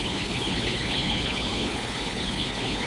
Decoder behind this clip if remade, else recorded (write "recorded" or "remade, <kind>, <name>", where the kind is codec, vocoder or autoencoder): remade, codec, HILCodec